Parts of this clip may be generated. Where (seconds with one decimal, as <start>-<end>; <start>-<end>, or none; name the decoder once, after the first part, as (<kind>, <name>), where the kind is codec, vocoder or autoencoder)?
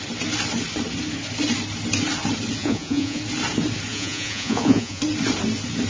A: 2.6-3.2 (vocoder, Vocos); 3.9-5.0